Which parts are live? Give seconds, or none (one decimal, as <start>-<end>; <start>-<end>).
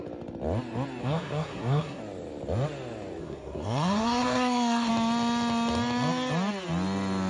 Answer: 0.0-1.0; 2.0-3.2; 4.9-7.3